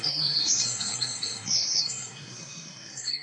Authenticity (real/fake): fake